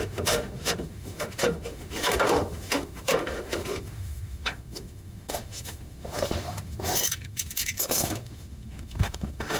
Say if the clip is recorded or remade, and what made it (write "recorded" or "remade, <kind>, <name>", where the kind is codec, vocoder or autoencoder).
remade, autoencoder, DAC-VAE